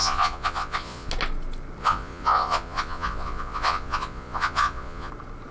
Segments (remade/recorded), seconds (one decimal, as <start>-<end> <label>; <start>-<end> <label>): 0.0-1.1 remade; 1.1-1.8 recorded; 1.8-5.1 remade; 5.1-5.5 recorded